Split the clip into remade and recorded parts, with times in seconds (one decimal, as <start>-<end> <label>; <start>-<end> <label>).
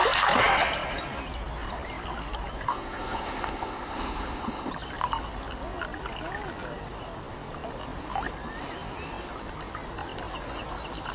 0.0-2.7 recorded; 2.7-4.7 remade; 4.7-11.1 recorded